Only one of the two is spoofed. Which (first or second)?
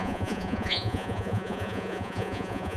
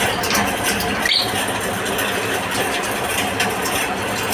first